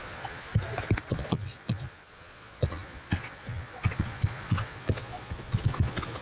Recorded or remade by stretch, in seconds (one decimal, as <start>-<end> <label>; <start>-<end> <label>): 0.0-0.5 remade; 0.5-1.1 recorded; 1.1-6.2 remade